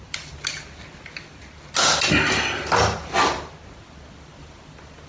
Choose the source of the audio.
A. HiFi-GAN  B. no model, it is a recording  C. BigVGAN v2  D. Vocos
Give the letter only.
B